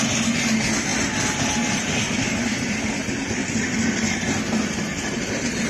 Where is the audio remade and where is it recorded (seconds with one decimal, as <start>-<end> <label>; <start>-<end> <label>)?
0.0-4.9 recorded; 4.9-5.7 remade